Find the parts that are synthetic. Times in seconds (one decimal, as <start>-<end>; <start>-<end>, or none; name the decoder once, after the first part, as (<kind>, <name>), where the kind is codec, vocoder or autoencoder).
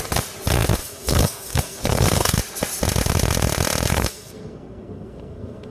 0.8-2.4 (codec, SNAC); 3.9-5.7